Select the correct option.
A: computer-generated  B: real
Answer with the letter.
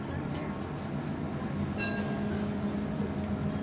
B